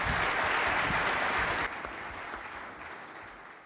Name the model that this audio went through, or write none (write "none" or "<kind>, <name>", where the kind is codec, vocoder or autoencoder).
none